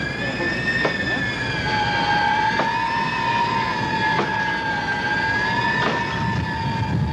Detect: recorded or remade recorded